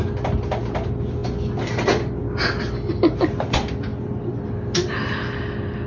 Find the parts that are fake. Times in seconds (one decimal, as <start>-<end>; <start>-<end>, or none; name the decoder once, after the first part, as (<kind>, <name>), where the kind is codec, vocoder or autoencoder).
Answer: none